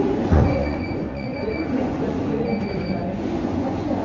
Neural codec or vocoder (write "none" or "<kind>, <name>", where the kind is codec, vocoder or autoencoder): vocoder, Vocos